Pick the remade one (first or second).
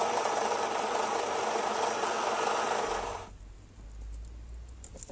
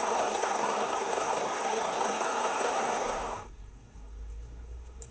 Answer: second